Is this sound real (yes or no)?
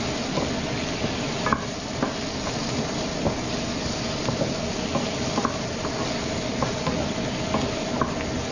yes